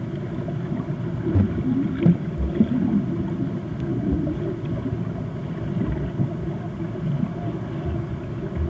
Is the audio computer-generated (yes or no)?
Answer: no